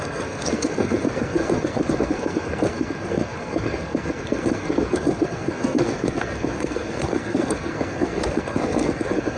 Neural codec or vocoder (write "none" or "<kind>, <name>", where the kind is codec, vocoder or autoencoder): codec, SNAC